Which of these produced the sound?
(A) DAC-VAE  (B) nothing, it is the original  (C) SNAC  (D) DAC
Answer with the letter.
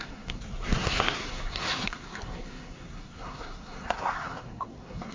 C